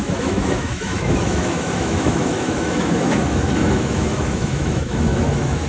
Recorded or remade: remade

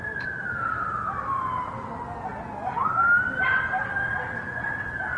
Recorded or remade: recorded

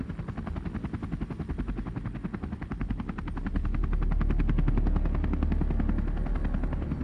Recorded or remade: recorded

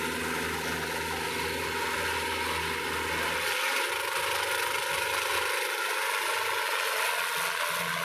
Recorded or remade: recorded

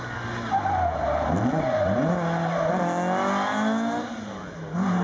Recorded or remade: recorded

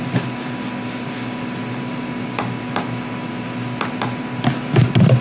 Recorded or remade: recorded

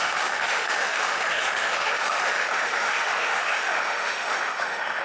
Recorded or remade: remade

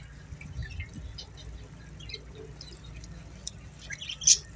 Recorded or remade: recorded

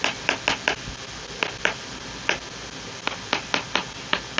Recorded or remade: recorded